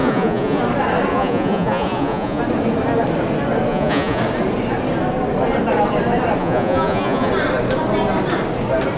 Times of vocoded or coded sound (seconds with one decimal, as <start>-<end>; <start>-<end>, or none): 0.0-0.6; 1.1-2.4; 3.7-4.2; 6.4-7.3